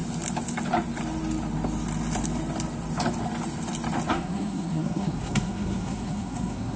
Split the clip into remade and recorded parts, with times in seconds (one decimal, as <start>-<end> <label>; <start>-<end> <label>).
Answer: 0.0-4.1 recorded; 4.1-6.8 remade